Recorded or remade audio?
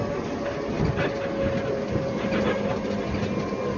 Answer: recorded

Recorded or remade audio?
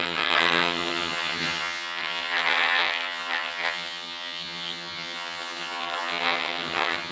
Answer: remade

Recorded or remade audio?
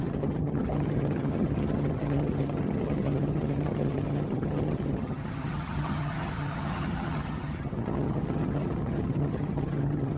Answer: remade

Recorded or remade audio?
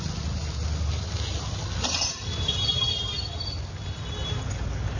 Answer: recorded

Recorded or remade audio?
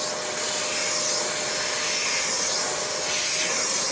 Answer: recorded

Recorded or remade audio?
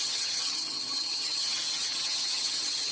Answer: remade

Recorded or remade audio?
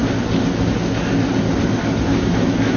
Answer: recorded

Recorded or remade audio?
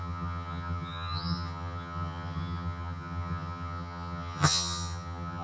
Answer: remade